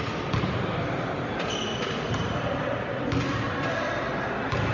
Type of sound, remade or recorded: recorded